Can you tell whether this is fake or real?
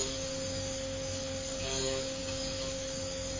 fake